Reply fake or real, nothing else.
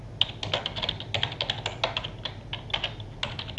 real